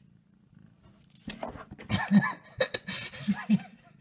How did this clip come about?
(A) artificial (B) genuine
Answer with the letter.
B